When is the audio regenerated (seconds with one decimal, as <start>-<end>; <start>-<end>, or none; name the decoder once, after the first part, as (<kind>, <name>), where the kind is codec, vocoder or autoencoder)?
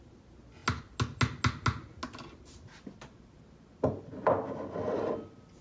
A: none